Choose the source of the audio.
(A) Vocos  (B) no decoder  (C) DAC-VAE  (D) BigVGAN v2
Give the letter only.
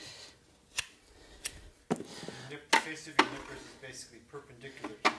B